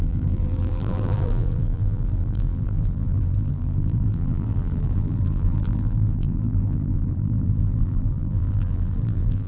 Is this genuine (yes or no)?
no